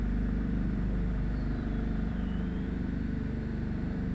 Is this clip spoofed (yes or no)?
yes